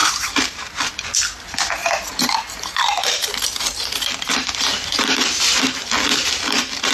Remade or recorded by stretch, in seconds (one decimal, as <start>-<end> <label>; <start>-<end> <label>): 0.0-0.9 remade; 0.9-1.8 recorded; 1.8-5.9 remade; 5.9-6.9 recorded